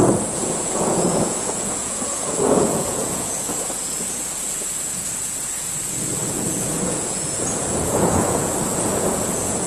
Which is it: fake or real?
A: fake